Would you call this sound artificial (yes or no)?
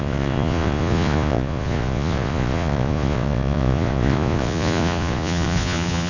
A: yes